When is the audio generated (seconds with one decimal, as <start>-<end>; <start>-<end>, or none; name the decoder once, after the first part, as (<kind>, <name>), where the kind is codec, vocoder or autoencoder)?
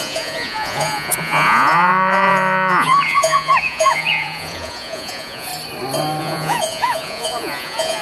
0.0-5.5 (vocoder, Vocos); 6.2-8.0